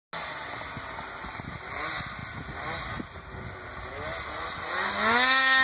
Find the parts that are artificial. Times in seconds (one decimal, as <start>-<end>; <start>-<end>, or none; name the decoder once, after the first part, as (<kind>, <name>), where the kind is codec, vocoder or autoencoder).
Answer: none